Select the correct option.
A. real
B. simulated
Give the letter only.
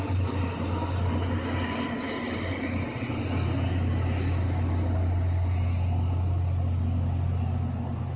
A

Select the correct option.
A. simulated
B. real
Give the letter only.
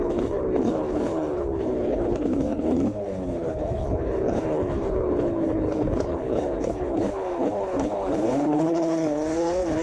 A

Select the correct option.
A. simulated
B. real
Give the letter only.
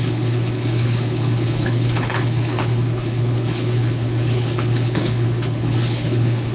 A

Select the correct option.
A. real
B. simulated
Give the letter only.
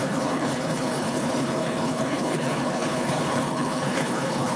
B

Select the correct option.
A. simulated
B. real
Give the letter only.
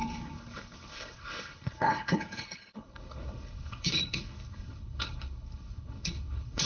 A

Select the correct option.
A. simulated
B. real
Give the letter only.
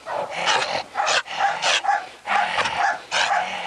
B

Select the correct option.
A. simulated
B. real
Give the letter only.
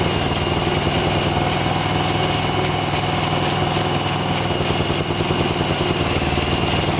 B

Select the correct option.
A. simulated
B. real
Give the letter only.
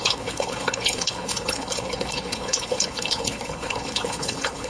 A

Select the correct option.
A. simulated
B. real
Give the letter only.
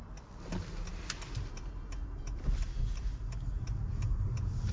B